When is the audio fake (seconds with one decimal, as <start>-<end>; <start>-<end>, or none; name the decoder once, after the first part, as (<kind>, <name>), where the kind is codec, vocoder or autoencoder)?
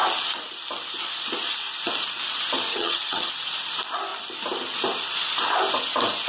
2.7-3.3 (vocoder, HiFi-GAN)